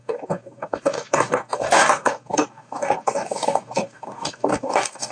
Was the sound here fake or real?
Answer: fake